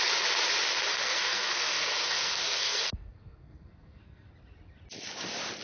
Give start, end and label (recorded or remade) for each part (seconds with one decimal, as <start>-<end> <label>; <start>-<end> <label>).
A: 0.0-0.9 recorded; 0.9-4.3 remade; 4.3-5.6 recorded